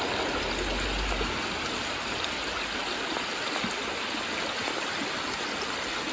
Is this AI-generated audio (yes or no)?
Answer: no